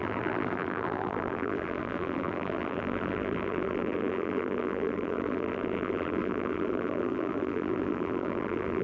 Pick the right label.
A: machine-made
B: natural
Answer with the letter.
A